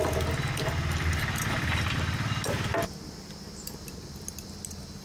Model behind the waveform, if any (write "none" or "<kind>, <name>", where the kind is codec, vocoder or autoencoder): none